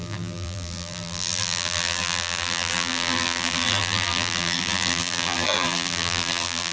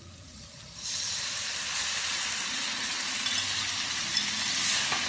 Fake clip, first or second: first